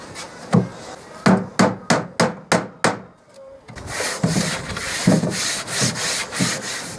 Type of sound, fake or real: real